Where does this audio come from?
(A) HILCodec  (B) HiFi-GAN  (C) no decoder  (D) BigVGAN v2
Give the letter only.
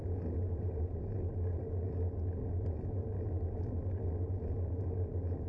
C